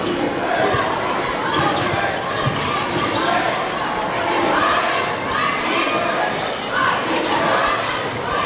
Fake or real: real